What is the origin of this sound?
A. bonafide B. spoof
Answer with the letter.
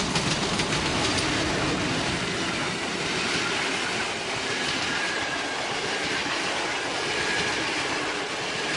A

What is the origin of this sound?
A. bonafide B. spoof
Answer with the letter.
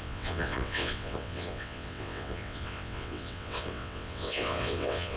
B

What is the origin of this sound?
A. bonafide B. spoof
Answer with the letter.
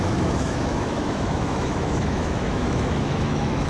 B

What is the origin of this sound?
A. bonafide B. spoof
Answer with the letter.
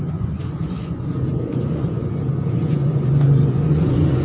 B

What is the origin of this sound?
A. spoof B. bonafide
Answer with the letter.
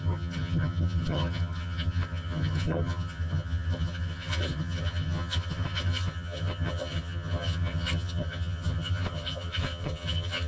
A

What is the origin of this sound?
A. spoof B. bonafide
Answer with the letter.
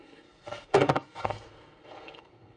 A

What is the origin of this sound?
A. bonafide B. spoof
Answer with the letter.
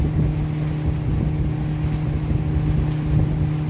A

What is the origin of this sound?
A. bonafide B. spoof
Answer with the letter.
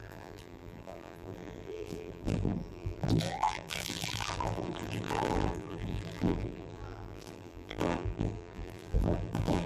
B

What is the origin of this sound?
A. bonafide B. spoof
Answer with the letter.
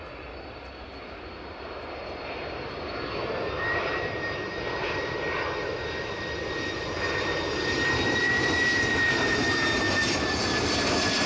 B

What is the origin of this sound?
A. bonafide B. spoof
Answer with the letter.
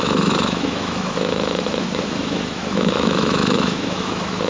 B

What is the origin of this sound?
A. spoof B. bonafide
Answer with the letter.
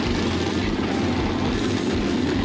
B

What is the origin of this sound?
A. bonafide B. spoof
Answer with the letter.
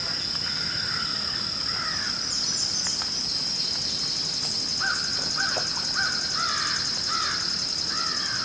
A